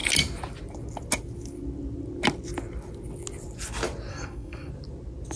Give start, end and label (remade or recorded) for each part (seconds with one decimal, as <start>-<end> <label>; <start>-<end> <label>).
0.0-4.1 recorded; 4.1-4.7 remade; 4.7-5.4 recorded